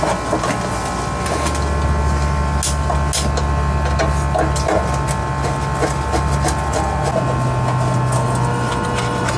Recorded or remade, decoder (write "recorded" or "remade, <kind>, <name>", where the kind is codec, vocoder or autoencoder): recorded